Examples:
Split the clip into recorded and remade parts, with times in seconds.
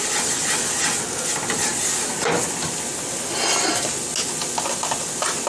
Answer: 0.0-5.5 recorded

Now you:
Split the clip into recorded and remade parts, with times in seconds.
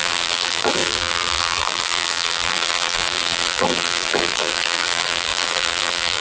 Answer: 0.0-6.2 remade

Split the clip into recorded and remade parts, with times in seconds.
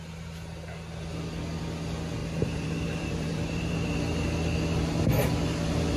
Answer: 0.0-2.2 recorded; 2.2-3.9 remade; 3.9-6.0 recorded